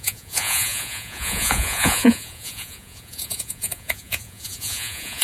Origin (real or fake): fake